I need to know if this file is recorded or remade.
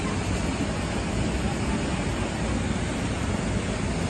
recorded